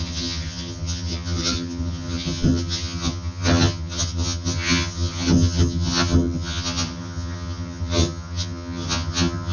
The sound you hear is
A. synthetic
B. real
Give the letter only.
A